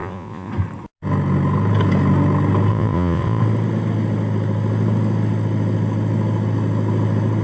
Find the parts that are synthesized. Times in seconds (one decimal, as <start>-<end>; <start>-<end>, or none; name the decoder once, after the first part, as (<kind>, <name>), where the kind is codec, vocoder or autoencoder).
0.0-0.5 (vocoder, Vocos); 2.7-3.4